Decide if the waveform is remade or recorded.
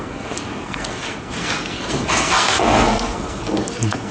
remade